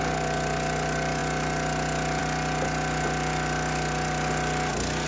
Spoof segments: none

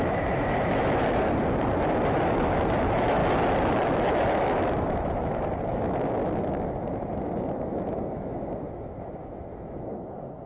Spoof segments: 0.0-1.0 (autoencoder, DAC-VAE); 2.3-3.2; 3.7-10.5

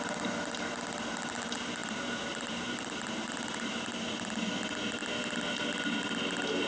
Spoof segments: 1.8-3.3 (vocoder, BigVGAN v2)

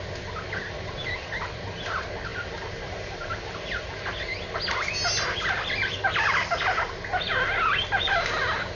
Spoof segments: none

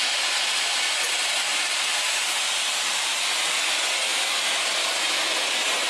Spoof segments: 1.5-3.1 (vocoder, BigVGAN v2); 4.1-5.0